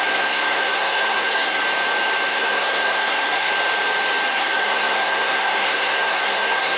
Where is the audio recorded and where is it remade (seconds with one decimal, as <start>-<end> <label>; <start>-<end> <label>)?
0.0-1.6 remade; 1.6-2.3 recorded; 2.3-3.5 remade; 3.5-4.3 recorded; 4.3-6.8 remade